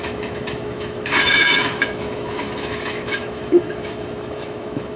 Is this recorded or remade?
remade